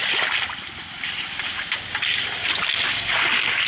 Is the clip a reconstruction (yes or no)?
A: no